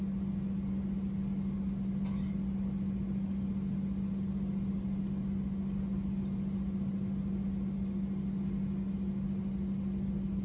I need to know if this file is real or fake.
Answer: real